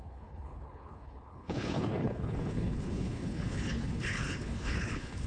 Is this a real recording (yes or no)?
no